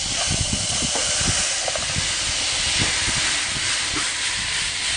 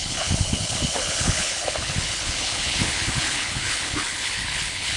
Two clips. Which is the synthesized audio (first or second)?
second